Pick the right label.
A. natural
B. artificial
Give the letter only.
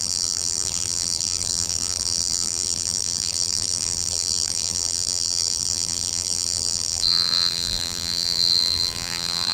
B